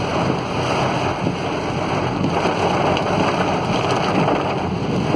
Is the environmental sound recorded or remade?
recorded